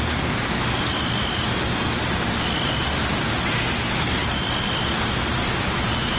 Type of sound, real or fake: real